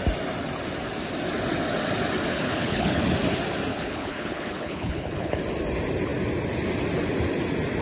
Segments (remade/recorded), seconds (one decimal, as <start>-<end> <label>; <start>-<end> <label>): 0.0-2.3 recorded; 2.3-3.0 remade; 3.0-3.7 recorded; 3.7-5.4 remade; 5.4-7.8 recorded

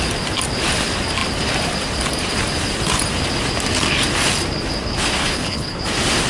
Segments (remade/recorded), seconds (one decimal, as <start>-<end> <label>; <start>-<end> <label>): 0.0-5.2 recorded; 5.2-5.8 remade; 5.8-6.3 recorded

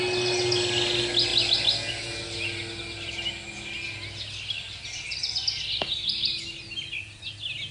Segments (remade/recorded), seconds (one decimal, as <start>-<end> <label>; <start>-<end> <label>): 0.0-7.7 recorded

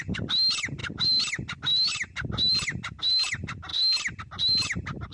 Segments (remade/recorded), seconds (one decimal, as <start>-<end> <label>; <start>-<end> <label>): 0.0-5.1 recorded

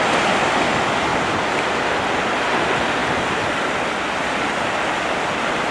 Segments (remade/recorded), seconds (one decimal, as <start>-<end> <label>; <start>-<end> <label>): 0.0-5.7 recorded

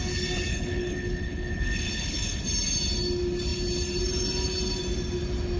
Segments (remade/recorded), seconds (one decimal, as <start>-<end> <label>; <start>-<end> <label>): 0.0-0.5 recorded; 0.5-2.4 remade; 2.4-5.6 recorded